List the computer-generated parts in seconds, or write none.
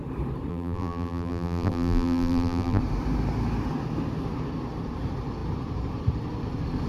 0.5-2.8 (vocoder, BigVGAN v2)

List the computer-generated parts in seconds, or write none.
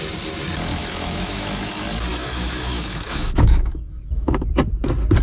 0.8-1.7 (autoencoder, DAC-VAE); 2.1-4.5